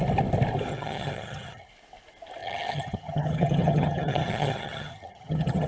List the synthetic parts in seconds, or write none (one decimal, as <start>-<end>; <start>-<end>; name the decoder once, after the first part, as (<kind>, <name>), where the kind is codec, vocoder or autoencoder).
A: 0.7-1.7 (vocoder, HiFi-GAN); 2.4-5.7